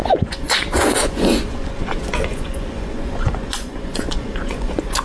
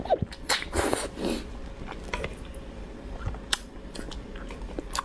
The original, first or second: second